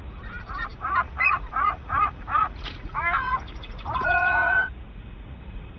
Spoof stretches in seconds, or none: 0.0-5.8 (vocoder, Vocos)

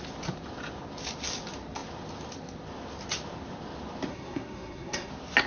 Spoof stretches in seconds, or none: 4.1-5.1 (codec, SNAC)

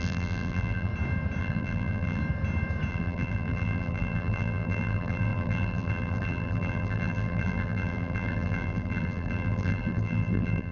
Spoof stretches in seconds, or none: 0.0-0.9 (vocoder, BigVGAN v2); 1.4-2.2; 2.9-10.7

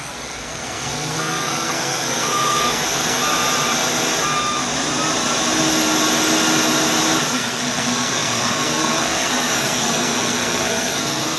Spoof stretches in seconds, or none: 0.0-3.2 (codec, SNAC); 7.2-11.4

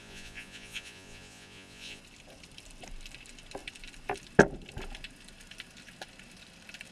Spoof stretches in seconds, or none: 0.0-2.0 (vocoder, Vocos)

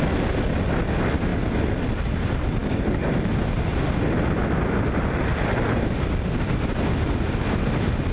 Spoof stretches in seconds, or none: 2.6-3.1 (codec, DAC)